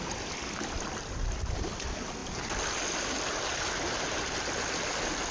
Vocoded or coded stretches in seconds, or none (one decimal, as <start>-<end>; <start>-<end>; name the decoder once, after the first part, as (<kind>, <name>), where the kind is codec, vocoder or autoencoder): none